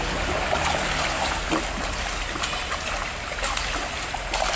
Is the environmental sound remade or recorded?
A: recorded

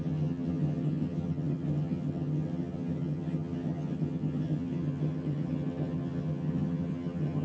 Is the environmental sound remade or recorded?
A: remade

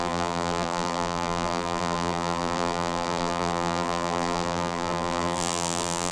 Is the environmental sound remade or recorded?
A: remade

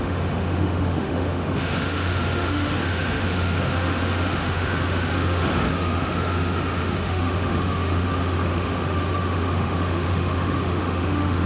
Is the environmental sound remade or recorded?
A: remade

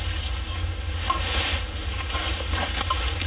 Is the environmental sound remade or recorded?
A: recorded